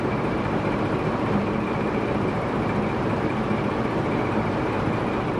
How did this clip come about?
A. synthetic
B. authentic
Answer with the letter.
A